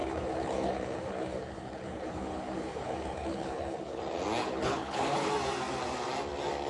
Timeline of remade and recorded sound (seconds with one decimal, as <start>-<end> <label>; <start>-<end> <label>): 0.0-4.0 remade; 4.0-4.4 recorded; 4.4-5.3 remade; 5.3-6.7 recorded